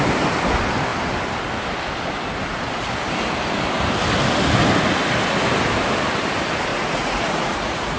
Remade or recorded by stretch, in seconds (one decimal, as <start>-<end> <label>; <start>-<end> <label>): 0.0-6.7 recorded; 6.7-8.0 remade